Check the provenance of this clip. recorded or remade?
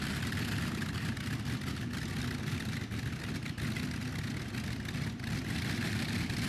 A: recorded